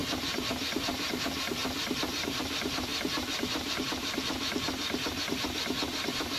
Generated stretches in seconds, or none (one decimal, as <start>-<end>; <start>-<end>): 0.0-1.6; 2.1-6.4